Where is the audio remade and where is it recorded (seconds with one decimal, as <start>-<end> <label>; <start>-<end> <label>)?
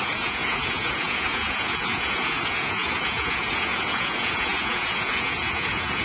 0.0-6.0 remade